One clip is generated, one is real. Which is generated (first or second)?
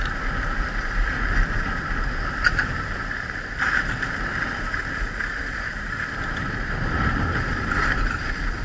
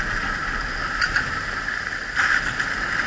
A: first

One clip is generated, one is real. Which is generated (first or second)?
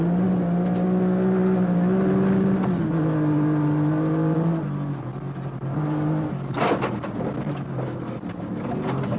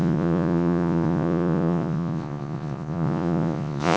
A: second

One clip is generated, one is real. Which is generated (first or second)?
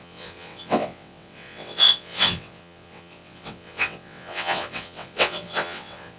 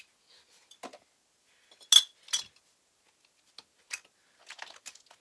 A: first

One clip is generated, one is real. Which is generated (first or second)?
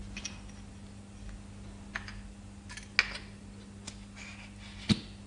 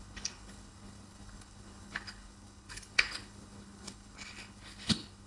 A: second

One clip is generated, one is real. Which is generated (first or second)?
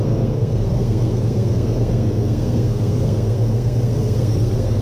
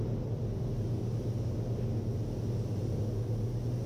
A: first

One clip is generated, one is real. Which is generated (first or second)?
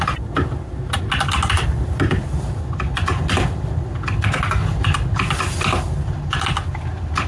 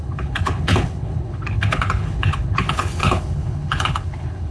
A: second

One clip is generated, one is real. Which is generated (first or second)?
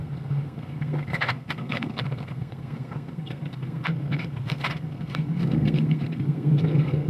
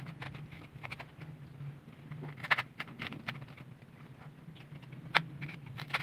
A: first